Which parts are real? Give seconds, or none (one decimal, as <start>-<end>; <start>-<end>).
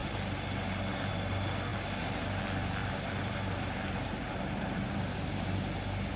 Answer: 0.0-2.8; 4.9-6.2